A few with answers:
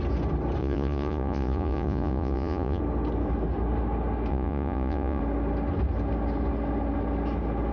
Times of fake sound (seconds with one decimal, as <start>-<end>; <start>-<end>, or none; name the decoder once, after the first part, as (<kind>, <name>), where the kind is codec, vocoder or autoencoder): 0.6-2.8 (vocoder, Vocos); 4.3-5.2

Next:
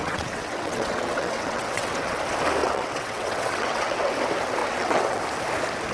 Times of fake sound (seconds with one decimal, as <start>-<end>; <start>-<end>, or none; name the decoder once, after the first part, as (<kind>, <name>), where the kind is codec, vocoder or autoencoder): 0.0-2.2 (vocoder, WaveNeXt); 2.6-4.1; 4.6-5.2

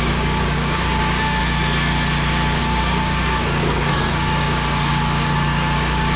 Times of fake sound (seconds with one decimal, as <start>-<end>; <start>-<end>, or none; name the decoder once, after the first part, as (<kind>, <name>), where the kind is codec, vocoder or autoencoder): 0.0-1.4 (codec, DAC); 2.6-6.2